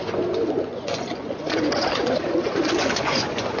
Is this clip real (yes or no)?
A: no